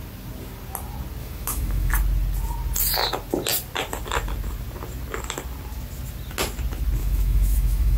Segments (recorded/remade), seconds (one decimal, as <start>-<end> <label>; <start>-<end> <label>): 0.0-1.2 recorded; 1.2-1.9 remade; 1.9-7.0 recorded; 7.0-8.0 remade